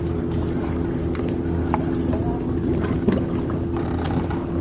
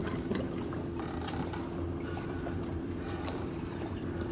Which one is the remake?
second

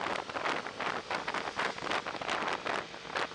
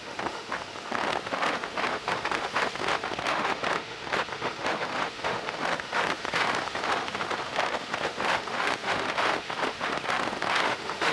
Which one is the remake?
second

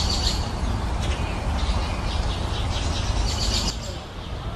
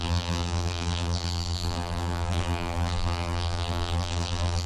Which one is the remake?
second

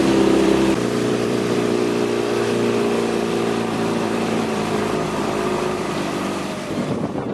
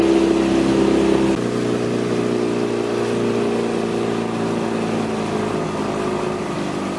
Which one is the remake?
first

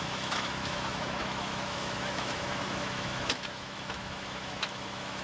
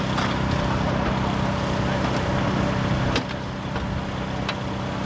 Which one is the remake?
first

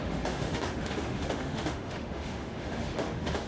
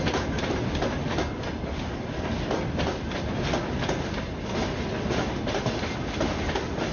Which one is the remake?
first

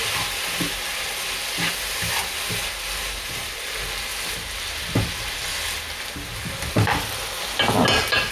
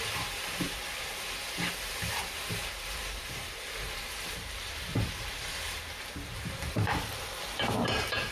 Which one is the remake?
second